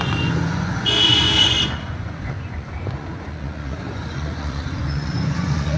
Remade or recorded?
remade